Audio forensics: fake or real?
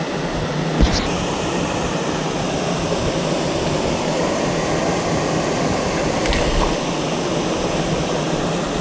real